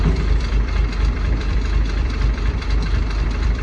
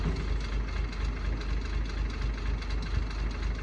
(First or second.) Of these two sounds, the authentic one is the second